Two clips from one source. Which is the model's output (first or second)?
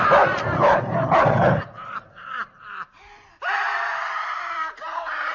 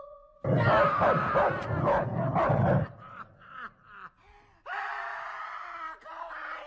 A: first